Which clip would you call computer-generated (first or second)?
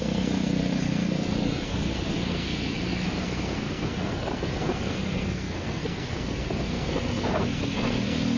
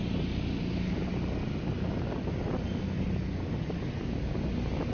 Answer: first